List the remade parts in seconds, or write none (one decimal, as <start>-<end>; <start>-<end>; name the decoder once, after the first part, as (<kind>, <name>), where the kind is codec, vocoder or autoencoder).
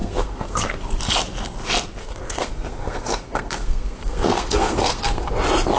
0.0-0.7 (codec, SNAC); 2.0-5.3